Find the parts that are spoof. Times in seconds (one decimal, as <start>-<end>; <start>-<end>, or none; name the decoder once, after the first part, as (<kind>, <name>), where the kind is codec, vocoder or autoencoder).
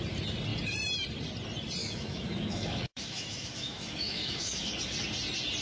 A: 1.8-4.7 (autoencoder, DAC-VAE)